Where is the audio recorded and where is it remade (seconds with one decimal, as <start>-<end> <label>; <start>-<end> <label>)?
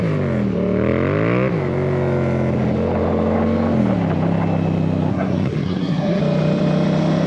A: 0.0-5.1 recorded; 5.1-6.2 remade; 6.2-7.3 recorded